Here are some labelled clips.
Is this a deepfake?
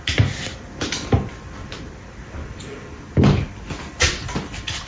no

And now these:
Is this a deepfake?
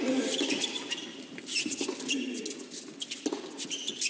no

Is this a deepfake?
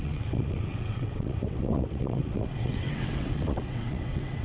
yes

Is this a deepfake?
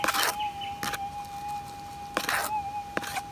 no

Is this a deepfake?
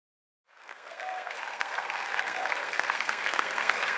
yes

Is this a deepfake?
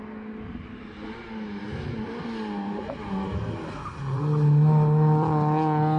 no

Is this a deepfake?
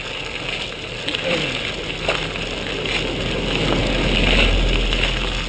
no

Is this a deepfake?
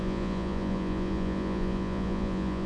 yes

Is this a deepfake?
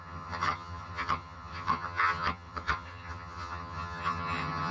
yes